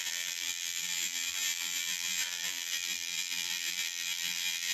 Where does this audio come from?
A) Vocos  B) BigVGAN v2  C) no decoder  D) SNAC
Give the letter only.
B